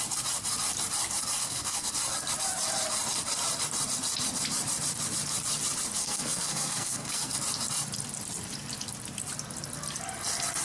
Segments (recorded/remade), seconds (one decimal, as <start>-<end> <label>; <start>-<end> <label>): 0.0-1.4 recorded; 1.4-1.9 remade; 1.9-6.0 recorded; 6.0-7.3 remade; 7.3-10.6 recorded